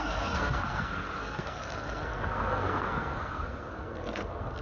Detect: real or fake fake